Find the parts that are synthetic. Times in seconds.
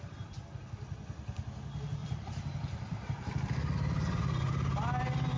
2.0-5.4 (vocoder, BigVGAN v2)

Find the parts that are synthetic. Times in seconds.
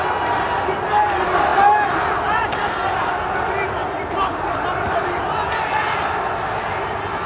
none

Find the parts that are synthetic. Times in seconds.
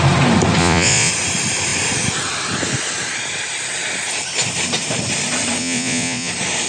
0.6-1.1 (vocoder, Vocos); 5.6-6.3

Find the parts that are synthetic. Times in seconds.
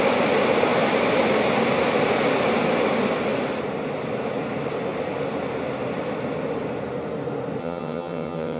7.6-8.6 (vocoder, HiFi-GAN)